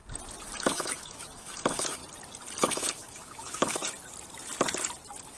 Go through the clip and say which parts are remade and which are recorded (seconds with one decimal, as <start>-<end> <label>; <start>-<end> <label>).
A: 0.0-0.6 recorded; 0.6-2.0 remade; 2.0-2.6 recorded; 2.6-3.8 remade; 3.8-5.4 recorded